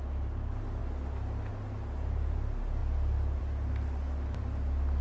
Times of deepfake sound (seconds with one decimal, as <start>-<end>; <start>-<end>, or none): none